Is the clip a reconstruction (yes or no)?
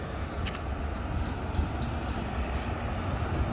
no